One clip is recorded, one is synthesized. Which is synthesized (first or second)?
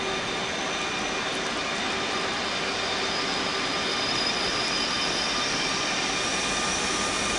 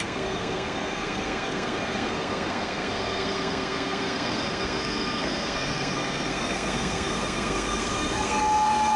second